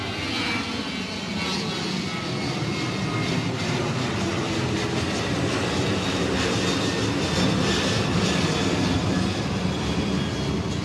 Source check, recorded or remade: recorded